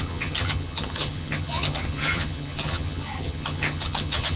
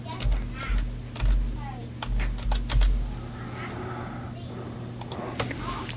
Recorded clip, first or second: second